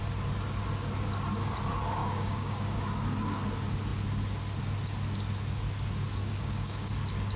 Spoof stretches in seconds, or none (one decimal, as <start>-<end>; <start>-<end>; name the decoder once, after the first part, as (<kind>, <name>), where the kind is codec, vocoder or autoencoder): 2.0-2.8 (codec, DAC); 6.2-6.9